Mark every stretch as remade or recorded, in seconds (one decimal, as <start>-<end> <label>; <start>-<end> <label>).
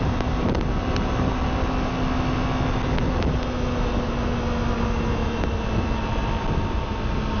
0.0-7.4 recorded